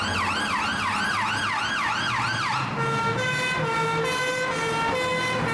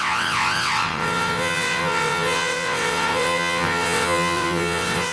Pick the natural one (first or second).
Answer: first